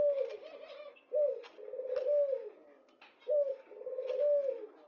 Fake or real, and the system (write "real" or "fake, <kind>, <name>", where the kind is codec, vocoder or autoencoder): real